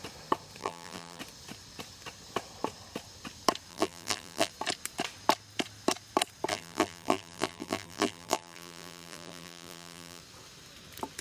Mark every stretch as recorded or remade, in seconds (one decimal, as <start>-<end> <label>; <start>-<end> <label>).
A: 0.0-0.6 recorded; 0.6-1.2 remade; 1.2-3.7 recorded; 3.7-4.5 remade; 4.5-6.5 recorded; 6.5-10.2 remade; 10.2-11.2 recorded